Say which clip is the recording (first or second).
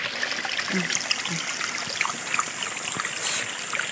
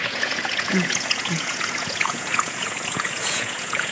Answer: first